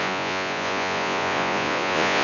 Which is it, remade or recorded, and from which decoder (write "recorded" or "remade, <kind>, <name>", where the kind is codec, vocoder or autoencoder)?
remade, vocoder, Vocos